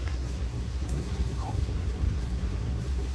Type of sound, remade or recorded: remade